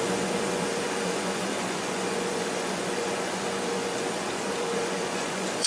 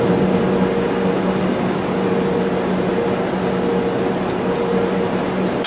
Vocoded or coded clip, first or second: first